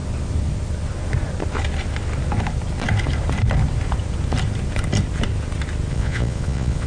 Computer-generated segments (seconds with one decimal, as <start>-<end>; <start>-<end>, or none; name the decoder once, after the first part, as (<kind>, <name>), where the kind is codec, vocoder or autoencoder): 5.9-6.9 (vocoder, Vocos)